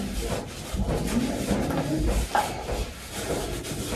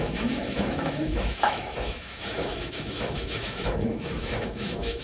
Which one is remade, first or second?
second